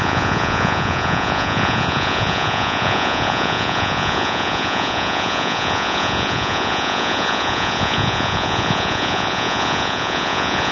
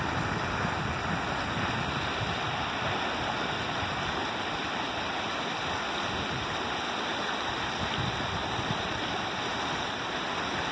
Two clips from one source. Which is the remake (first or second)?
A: first